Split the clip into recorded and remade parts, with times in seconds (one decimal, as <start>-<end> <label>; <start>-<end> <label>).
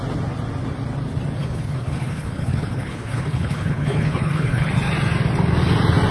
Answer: 0.0-1.4 recorded; 1.4-4.7 remade; 4.7-6.1 recorded